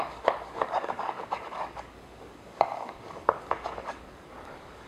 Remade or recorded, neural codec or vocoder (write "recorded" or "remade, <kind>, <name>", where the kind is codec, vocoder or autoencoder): remade, codec, DAC